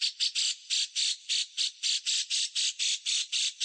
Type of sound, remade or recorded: recorded